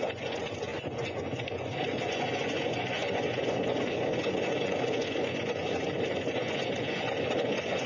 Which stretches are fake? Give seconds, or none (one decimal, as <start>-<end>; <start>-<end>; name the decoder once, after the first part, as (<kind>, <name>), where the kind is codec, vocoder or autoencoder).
0.0-7.9 (vocoder, Vocos)